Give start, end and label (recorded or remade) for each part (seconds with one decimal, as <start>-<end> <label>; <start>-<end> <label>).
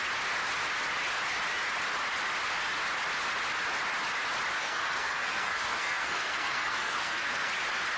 0.0-4.6 recorded; 4.6-7.5 remade; 7.5-8.0 recorded